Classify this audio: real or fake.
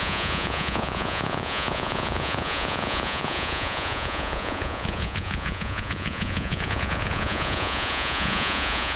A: fake